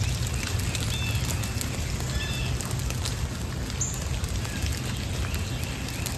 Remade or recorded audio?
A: recorded